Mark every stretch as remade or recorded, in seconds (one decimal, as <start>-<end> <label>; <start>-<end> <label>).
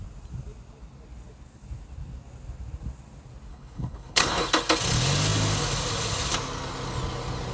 0.0-3.5 recorded; 3.5-4.5 remade; 4.5-7.5 recorded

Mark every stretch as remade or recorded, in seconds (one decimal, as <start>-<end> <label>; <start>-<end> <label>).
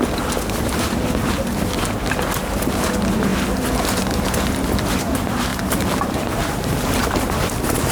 0.0-5.5 recorded; 5.5-7.5 remade; 7.5-7.9 recorded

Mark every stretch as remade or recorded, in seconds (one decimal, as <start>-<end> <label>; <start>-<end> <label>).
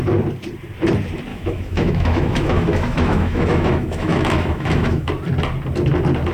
0.0-1.3 recorded; 1.3-5.1 remade; 5.1-6.3 recorded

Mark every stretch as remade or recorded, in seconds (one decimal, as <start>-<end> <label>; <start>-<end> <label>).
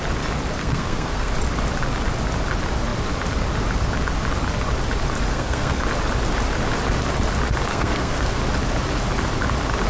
0.0-0.6 recorded; 0.6-1.3 remade; 1.3-5.3 recorded; 5.3-5.8 remade; 5.8-7.7 recorded; 7.7-8.4 remade; 8.4-9.9 recorded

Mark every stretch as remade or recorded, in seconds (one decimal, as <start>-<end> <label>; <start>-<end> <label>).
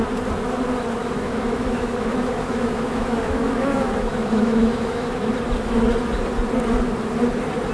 0.0-1.0 recorded; 1.0-5.3 remade; 5.3-7.7 recorded